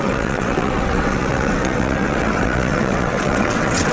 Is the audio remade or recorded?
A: remade